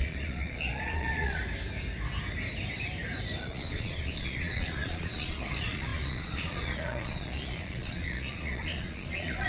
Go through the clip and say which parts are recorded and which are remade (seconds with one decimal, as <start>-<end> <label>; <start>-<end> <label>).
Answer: 0.0-1.4 remade; 1.4-3.4 recorded; 3.4-9.5 remade

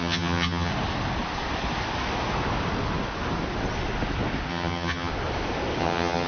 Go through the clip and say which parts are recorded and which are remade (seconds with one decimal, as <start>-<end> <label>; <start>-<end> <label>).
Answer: 0.0-0.7 remade; 0.7-4.5 recorded; 4.5-5.1 remade; 5.1-5.8 recorded; 5.8-6.3 remade

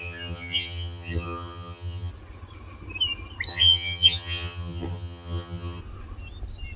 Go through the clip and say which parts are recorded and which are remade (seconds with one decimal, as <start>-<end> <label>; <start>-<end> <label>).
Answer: 0.0-2.1 remade; 2.1-3.5 recorded; 3.5-5.8 remade; 5.8-6.8 recorded

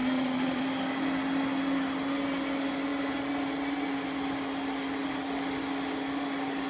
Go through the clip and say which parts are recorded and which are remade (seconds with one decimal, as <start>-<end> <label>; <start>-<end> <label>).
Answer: 0.0-0.6 remade; 0.6-6.7 recorded

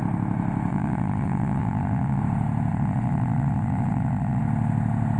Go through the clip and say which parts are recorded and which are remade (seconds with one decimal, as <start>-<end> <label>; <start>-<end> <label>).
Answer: 0.0-0.7 recorded; 0.7-2.2 remade; 2.2-2.7 recorded; 2.7-4.4 remade; 4.4-5.2 recorded

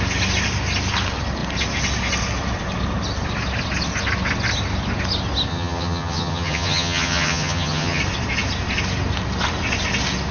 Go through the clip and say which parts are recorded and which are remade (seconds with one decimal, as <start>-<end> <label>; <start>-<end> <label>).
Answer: 0.0-5.5 recorded; 5.5-8.0 remade; 8.0-10.3 recorded

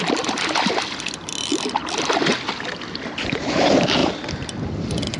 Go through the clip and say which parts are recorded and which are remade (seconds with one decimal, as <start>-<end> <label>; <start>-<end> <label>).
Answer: 0.0-5.2 recorded